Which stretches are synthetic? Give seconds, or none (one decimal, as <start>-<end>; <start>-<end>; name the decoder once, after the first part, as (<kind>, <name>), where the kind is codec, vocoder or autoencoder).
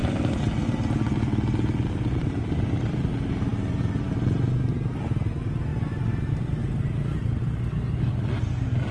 none